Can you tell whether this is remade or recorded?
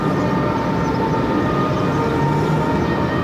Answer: recorded